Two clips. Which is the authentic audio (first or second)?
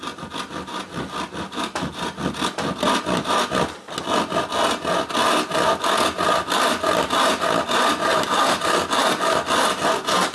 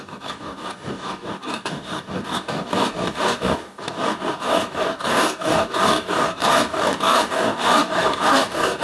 first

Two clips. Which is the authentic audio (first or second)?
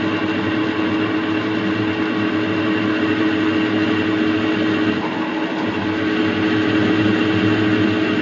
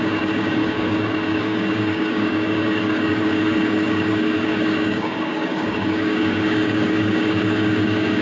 first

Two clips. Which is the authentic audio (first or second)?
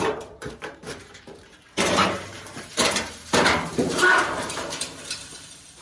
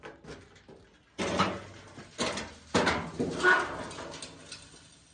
second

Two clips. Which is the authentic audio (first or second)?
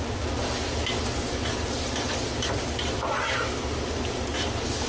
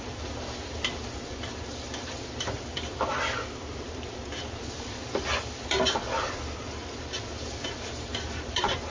first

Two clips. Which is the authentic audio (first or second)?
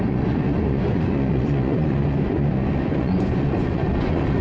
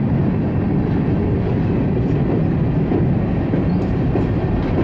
second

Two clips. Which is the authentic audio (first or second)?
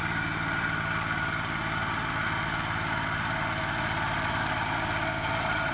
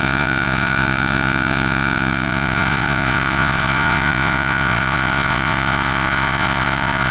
first